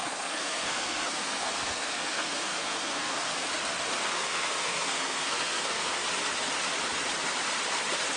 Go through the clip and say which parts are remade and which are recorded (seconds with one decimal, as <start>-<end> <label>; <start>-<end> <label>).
0.0-3.3 remade; 3.3-4.0 recorded; 4.0-6.0 remade; 6.0-8.2 recorded